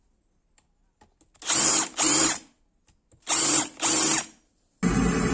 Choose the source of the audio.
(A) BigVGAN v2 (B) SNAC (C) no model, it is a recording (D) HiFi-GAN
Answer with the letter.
C